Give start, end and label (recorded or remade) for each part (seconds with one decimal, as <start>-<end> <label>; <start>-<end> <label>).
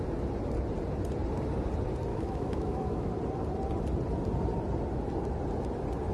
0.0-2.1 recorded; 2.1-3.1 remade; 3.1-6.1 recorded